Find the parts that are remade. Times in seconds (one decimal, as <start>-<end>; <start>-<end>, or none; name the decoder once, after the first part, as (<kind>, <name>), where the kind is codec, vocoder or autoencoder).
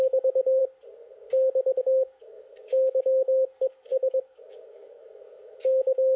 0.0-0.6 (codec, DAC); 1.8-6.2